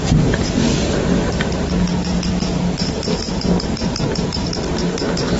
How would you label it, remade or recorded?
recorded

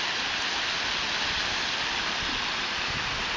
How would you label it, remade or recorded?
recorded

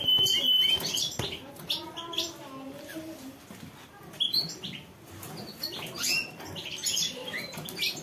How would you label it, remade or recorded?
recorded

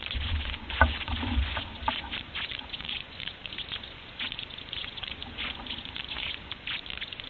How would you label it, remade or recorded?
remade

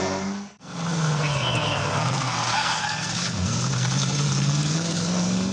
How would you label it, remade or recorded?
remade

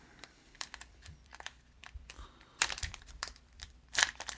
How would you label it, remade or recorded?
remade